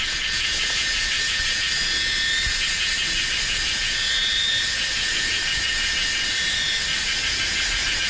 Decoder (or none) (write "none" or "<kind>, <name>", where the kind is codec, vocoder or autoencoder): vocoder, Vocos